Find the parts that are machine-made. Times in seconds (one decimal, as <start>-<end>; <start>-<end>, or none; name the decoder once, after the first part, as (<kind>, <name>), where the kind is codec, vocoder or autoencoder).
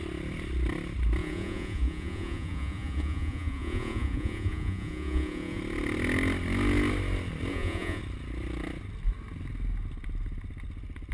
1.2-5.6 (vocoder, Vocos); 7.5-8.0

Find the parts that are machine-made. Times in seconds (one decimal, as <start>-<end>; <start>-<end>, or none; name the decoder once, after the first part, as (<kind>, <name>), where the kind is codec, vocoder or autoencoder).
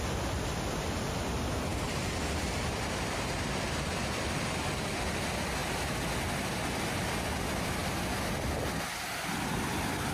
none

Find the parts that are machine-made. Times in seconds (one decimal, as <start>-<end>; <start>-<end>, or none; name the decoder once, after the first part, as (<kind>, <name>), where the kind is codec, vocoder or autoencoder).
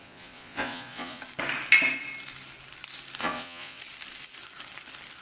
0.0-1.2 (vocoder, Vocos); 3.2-3.8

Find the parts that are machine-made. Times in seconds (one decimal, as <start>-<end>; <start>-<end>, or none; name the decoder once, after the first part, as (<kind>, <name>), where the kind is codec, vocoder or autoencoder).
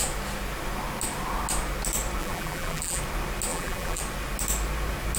2.2-3.0 (vocoder, BigVGAN v2); 3.5-4.0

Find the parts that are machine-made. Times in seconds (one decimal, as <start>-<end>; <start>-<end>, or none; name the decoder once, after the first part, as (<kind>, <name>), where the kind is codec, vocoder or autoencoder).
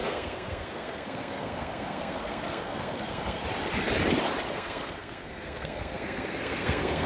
0.0-3.4 (codec, SNAC); 4.5-7.1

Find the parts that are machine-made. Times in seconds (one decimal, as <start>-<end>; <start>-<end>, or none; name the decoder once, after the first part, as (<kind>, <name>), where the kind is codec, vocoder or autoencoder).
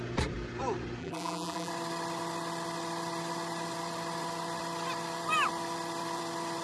1.0-1.7 (vocoder, BigVGAN v2)